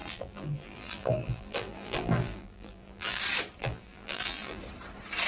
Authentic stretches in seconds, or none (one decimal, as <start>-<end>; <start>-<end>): 3.2-3.6; 4.6-5.3